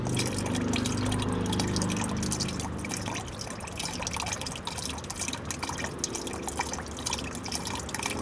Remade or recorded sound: recorded